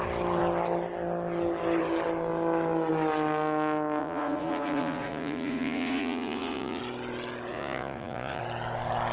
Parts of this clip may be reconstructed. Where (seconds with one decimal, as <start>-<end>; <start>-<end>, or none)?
4.0-6.8; 7.5-8.4